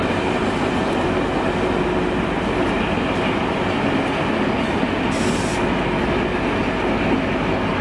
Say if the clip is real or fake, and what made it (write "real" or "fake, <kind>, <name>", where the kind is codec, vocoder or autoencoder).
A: real